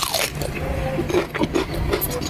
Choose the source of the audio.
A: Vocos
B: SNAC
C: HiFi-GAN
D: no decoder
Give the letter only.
D